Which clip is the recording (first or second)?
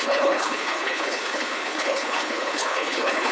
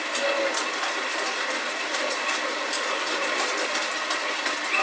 second